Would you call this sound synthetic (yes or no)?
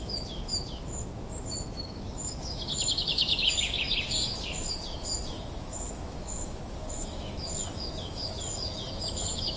yes